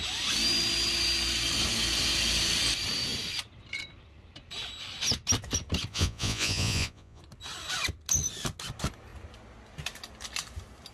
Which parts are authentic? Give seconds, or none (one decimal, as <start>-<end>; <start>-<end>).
0.0-5.9; 7.2-10.9